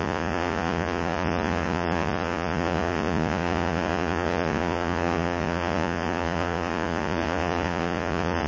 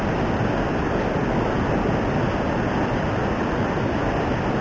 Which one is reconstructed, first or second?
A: first